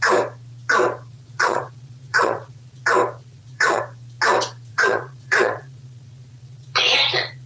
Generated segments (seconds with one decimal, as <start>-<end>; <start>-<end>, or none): 1.1-2.8; 3.2-3.8; 4.7-7.5